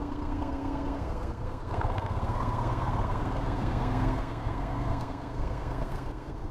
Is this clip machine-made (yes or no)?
yes